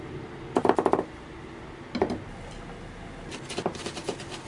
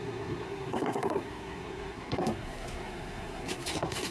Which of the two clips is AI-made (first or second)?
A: second